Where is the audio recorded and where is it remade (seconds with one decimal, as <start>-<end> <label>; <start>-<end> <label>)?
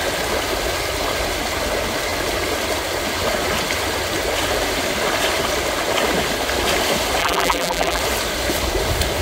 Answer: 0.0-7.2 recorded; 7.2-8.0 remade; 8.0-9.2 recorded